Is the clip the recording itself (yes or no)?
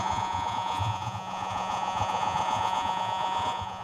no